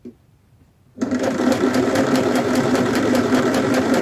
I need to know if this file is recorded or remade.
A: remade